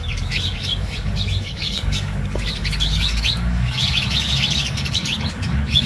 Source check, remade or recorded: remade